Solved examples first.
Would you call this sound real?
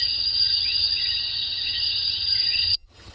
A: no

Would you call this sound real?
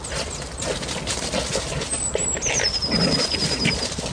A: yes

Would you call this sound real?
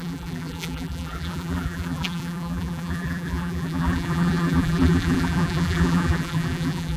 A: no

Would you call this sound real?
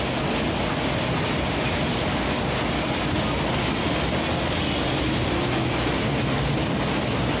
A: yes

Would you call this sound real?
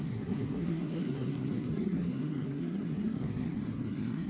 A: no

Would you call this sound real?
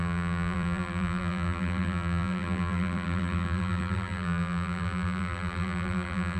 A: no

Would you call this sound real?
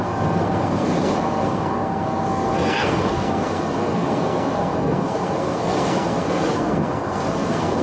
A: no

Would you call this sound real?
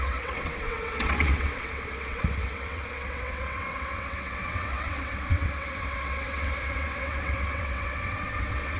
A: no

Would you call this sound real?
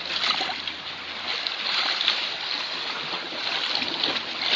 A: yes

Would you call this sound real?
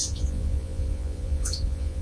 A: no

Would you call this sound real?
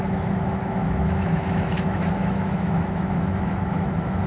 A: no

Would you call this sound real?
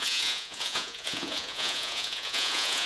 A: no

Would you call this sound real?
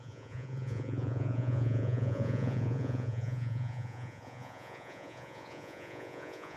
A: no